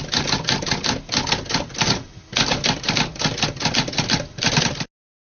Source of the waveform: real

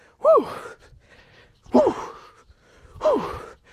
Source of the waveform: real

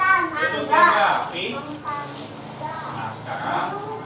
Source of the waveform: real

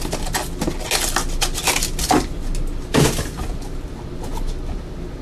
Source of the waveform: real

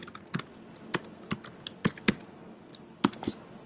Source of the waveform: real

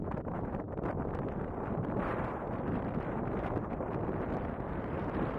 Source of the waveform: fake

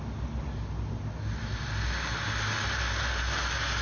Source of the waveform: real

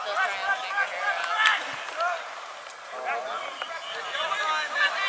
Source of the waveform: real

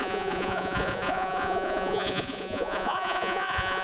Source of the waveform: fake